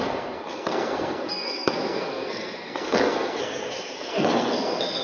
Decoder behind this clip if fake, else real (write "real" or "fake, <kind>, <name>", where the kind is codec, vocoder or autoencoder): fake, codec, SNAC